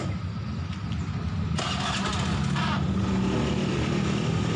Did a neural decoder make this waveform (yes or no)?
no